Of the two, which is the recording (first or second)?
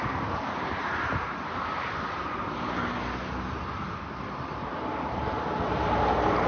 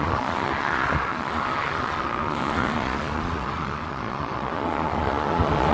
first